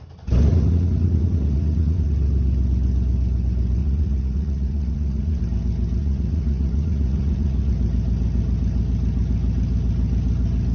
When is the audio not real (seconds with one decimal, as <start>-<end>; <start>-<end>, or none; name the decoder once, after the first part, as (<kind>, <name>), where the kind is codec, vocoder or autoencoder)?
0.5-2.1 (vocoder, Vocos); 3.8-5.4; 6.0-7.7